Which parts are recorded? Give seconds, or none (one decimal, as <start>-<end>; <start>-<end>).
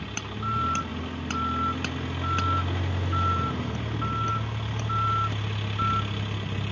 0.0-6.7